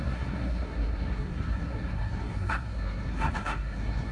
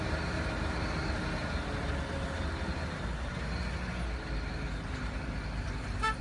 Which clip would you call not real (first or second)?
first